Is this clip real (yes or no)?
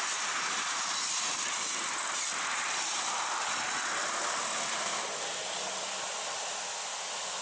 yes